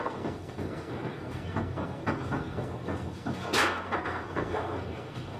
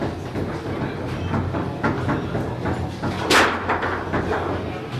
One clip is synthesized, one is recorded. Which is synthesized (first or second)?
first